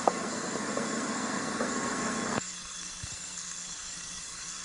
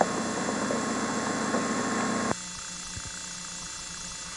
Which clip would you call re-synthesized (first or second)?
first